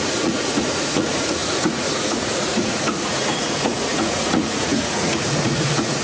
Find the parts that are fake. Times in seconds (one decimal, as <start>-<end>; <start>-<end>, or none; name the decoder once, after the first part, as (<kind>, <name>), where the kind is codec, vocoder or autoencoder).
0.0-6.0 (vocoder, Vocos)